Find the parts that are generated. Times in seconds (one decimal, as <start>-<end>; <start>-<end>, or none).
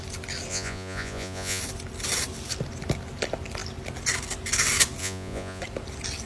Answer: 0.5-1.6; 5.0-5.6